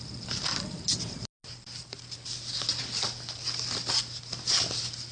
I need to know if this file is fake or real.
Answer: real